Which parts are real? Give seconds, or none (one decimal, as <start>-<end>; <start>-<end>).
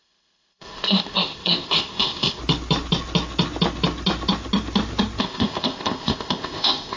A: 2.4-5.2